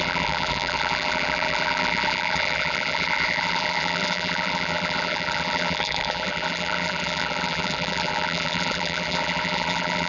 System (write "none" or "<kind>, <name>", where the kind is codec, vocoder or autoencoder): vocoder, BigVGAN v2